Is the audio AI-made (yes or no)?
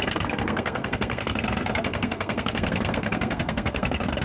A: yes